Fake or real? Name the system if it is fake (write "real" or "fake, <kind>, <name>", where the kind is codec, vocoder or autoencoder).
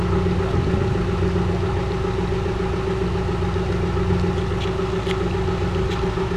real